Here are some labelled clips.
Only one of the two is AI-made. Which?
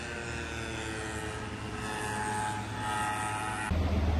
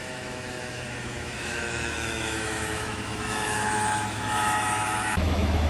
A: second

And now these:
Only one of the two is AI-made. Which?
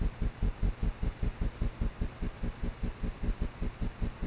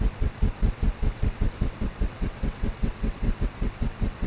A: second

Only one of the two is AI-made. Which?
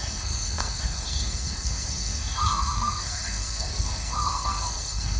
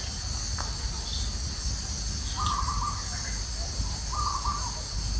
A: first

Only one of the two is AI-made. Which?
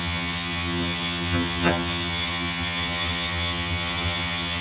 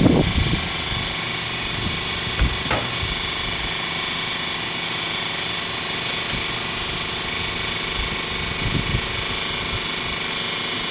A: first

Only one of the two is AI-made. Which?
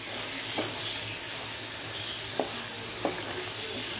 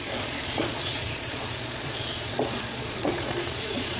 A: second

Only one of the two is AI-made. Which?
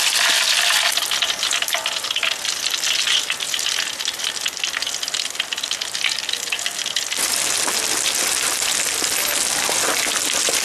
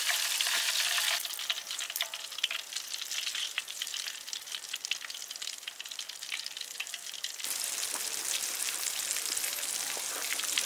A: second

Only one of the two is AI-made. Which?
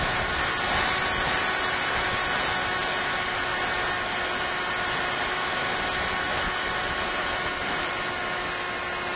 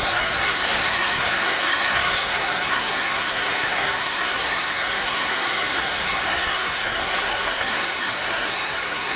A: second